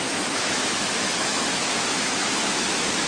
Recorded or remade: remade